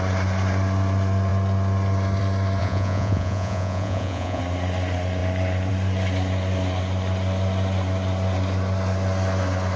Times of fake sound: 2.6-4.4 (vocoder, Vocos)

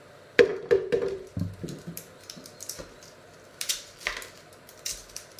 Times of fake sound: none

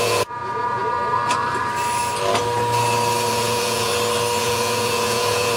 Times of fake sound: 0.0-0.8 (vocoder, Vocos); 3.3-3.9; 4.4-5.6